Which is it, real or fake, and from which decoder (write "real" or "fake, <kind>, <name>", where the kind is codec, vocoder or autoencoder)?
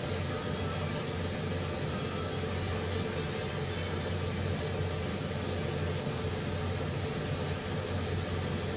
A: real